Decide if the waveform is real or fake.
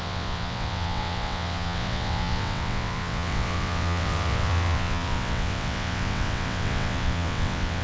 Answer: fake